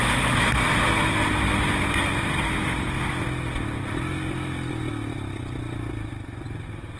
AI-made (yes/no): no